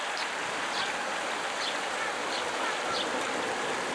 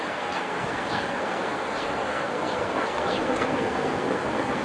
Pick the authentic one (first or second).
first